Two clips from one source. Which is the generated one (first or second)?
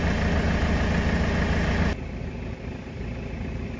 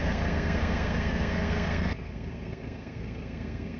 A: second